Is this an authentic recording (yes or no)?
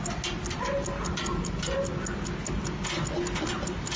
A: yes